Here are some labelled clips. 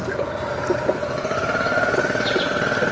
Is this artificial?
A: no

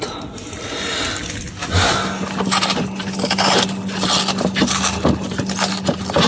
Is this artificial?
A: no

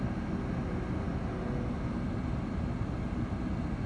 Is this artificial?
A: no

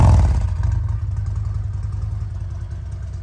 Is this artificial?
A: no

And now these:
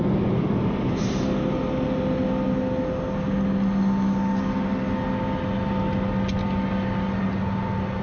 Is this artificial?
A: no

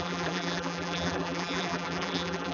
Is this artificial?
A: yes